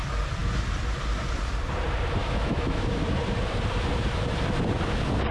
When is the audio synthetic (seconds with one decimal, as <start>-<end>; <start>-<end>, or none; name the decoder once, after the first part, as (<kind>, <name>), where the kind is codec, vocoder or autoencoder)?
2.2-3.0 (autoencoder, DAC-VAE)